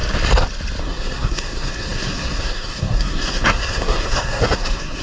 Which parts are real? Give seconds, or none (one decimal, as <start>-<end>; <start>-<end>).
0.0-0.8

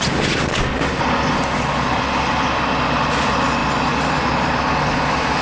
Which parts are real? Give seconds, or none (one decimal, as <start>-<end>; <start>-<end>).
0.0-5.4

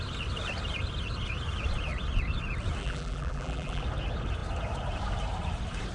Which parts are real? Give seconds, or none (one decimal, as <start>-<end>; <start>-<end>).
0.0-2.8; 3.8-5.9

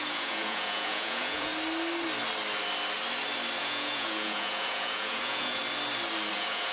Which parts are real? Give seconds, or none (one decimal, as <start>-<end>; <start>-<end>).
1.5-3.6; 5.6-6.3

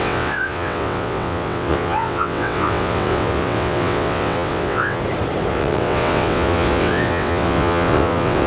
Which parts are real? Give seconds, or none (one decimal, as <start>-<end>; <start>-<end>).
5.0-5.5